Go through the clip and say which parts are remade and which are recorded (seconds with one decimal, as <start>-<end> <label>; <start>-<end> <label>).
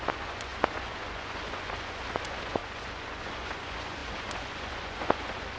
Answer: 0.0-5.6 remade